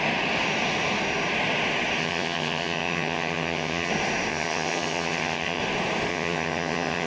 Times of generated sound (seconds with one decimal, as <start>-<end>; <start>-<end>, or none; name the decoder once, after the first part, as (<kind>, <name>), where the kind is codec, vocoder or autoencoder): 2.0-3.9 (vocoder, HiFi-GAN); 4.3-5.6; 6.1-7.1